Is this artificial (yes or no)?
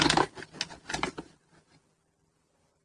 no